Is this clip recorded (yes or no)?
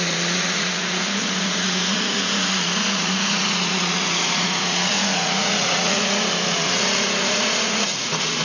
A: no